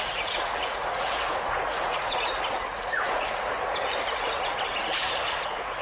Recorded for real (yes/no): no